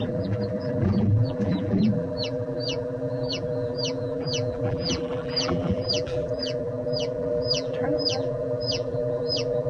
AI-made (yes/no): yes